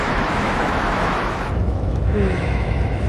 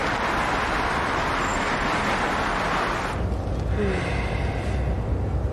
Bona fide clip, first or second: second